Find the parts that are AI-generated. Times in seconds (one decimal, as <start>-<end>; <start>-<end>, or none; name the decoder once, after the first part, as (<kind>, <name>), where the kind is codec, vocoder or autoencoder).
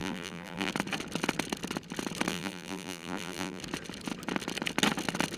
0.0-0.7 (vocoder, BigVGAN v2); 2.3-3.6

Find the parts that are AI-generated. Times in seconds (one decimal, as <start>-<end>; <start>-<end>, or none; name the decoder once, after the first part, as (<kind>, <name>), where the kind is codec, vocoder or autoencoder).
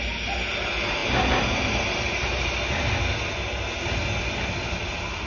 none